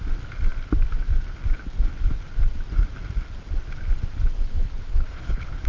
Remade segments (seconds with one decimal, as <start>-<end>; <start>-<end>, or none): 4.9-5.7